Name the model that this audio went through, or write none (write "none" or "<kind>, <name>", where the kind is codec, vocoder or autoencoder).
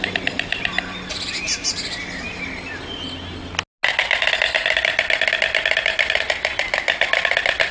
none